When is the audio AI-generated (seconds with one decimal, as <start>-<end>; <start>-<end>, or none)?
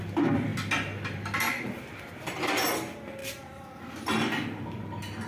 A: none